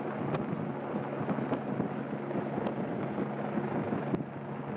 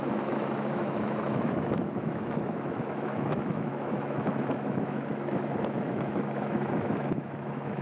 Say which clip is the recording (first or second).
first